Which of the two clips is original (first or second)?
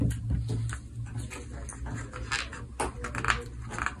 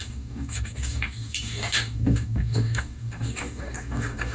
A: first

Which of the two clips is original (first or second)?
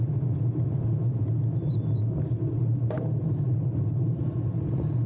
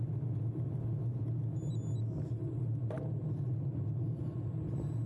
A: second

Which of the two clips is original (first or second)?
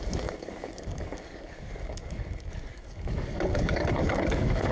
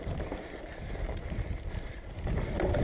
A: second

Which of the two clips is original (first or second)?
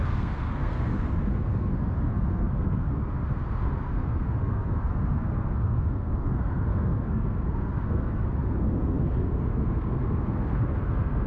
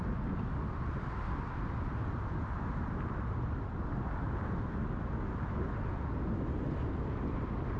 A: second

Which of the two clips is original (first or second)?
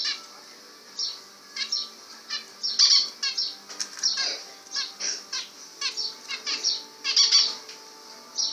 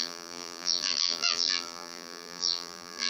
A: first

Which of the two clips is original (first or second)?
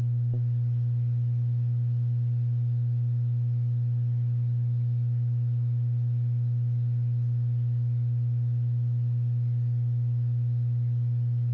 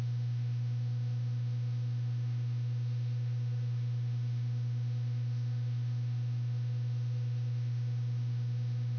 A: first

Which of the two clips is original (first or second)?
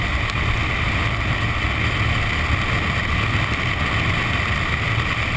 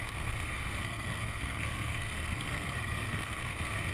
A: first